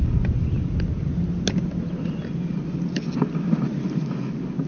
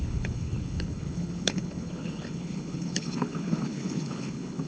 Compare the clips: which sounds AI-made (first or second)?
second